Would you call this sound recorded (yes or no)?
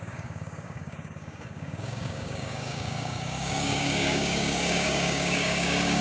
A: no